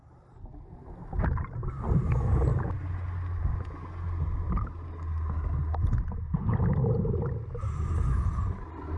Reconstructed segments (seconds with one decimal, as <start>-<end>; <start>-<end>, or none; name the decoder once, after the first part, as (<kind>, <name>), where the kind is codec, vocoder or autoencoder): none